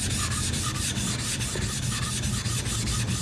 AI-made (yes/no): no